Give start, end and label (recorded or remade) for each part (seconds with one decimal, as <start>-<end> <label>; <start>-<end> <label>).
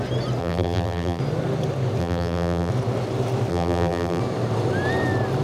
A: 0.0-0.4 recorded; 0.4-1.2 remade; 1.2-2.0 recorded; 2.0-2.7 remade; 2.7-3.5 recorded; 3.5-4.2 remade; 4.2-5.4 recorded